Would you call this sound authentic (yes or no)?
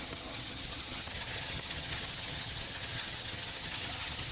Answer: no